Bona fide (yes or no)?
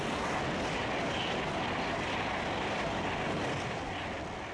yes